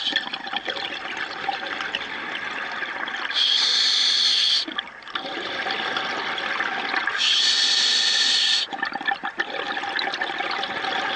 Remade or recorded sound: recorded